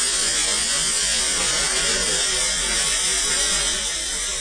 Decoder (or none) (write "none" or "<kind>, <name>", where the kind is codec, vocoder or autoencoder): vocoder, Vocos